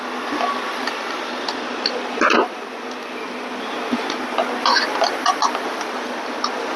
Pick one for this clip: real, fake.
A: real